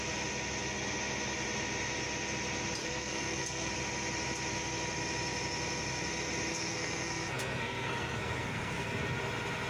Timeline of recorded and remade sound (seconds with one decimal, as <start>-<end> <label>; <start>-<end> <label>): 0.0-2.8 recorded; 2.8-3.7 remade; 3.7-6.5 recorded; 6.5-9.2 remade; 9.2-9.7 recorded